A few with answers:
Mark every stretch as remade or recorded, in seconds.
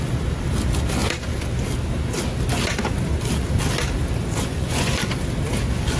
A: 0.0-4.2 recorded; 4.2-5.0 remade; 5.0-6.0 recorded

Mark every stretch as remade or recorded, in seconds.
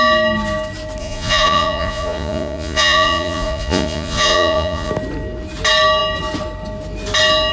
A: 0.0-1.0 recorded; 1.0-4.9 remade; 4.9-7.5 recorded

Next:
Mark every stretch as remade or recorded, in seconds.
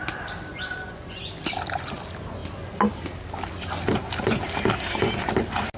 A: 0.0-0.5 recorded; 0.5-1.2 remade; 1.2-5.8 recorded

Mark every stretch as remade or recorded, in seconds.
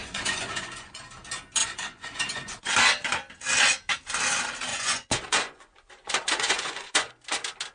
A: 0.0-1.0 remade; 1.0-1.6 recorded; 1.6-2.7 remade; 2.7-4.7 recorded; 4.7-7.1 remade; 7.1-7.7 recorded